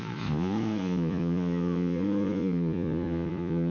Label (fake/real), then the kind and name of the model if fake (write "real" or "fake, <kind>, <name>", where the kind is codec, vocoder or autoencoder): fake, vocoder, Vocos